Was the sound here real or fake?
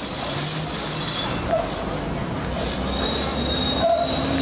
real